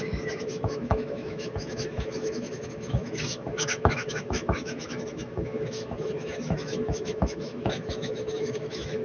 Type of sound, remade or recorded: remade